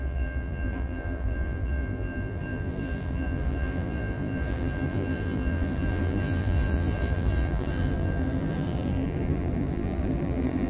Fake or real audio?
fake